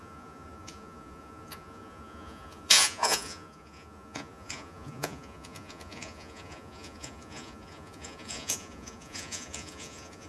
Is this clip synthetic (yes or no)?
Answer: yes